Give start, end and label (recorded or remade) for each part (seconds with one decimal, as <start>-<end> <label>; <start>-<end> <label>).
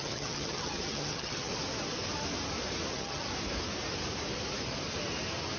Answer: 0.0-1.5 remade; 1.5-2.9 recorded; 2.9-3.3 remade; 3.3-5.6 recorded